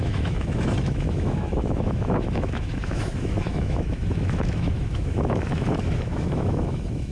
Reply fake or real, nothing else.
fake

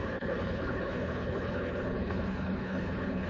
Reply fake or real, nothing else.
fake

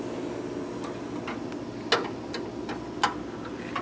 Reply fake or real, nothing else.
real